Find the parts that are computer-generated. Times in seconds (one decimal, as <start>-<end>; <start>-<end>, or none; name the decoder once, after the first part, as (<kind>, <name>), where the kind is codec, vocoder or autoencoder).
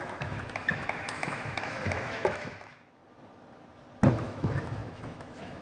0.0-3.0 (autoencoder, DAC-VAE); 4.1-5.6